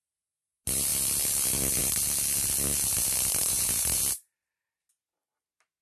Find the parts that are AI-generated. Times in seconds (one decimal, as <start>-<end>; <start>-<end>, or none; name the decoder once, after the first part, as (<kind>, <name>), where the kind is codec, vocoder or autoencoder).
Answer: 3.4-4.0 (vocoder, Vocos)